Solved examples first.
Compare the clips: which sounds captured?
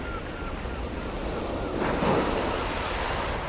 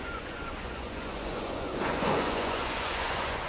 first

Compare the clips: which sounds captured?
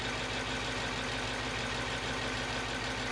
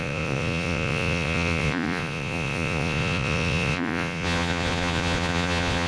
first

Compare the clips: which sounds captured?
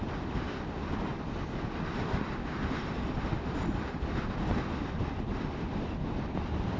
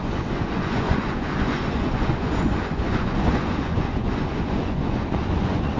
first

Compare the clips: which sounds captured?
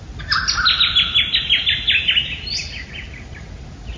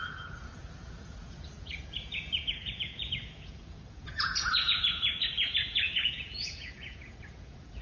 first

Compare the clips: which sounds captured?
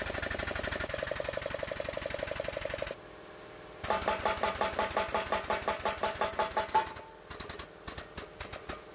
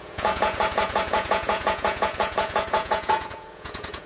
first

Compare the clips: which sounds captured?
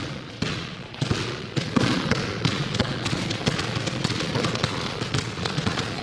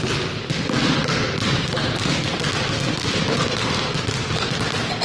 second